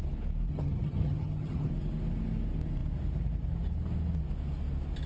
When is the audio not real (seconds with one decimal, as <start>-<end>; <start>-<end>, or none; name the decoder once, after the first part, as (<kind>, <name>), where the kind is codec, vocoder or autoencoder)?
0.5-1.7 (vocoder, HiFi-GAN)